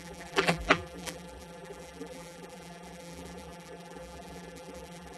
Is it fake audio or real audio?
fake